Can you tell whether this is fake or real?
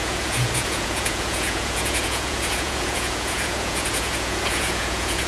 fake